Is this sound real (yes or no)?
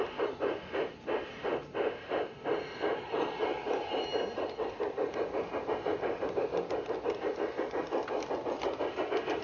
yes